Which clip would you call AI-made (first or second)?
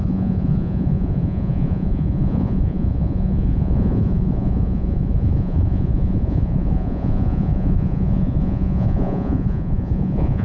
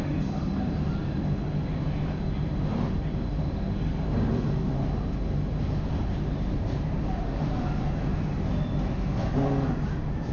first